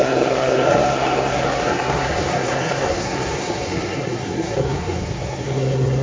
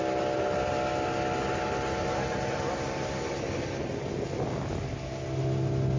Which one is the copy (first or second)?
first